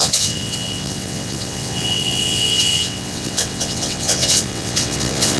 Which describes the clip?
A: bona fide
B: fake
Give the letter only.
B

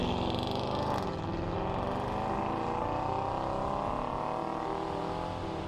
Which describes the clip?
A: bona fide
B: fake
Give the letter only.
A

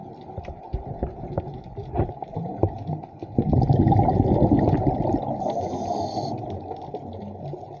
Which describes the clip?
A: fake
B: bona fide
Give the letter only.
B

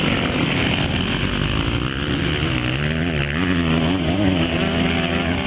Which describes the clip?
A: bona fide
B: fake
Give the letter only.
A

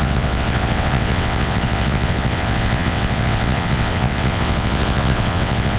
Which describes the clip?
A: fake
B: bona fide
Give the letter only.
A